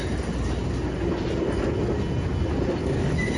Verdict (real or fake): real